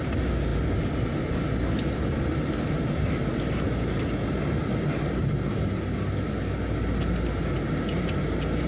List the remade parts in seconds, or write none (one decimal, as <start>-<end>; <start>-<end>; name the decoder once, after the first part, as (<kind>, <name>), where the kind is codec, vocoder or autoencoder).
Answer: none